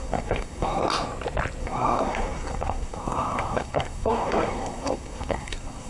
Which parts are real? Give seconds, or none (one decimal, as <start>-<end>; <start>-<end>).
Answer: 0.8-1.6